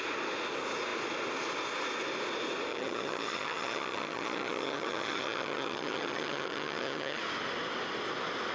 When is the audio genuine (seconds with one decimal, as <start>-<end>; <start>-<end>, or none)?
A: 0.0-2.7; 7.2-8.5